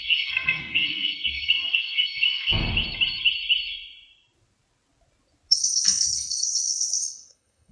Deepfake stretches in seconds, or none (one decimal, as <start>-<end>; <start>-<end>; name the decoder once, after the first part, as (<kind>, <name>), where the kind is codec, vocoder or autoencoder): 0.0-2.6 (codec, SNAC); 5.5-7.7